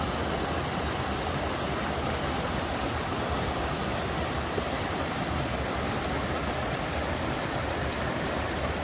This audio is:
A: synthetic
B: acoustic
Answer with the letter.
B